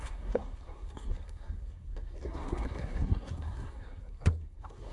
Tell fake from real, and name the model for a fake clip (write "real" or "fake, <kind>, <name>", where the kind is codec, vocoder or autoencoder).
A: fake, codec, SNAC